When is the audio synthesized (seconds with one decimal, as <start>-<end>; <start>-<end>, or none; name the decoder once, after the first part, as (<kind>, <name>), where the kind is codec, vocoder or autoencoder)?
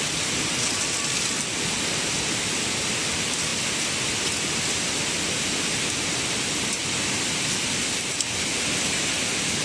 none